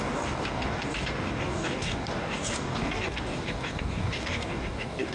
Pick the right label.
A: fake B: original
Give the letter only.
A